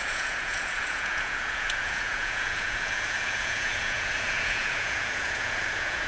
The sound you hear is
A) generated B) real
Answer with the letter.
A